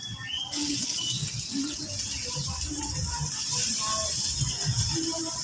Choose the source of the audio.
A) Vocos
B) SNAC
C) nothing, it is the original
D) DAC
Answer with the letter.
C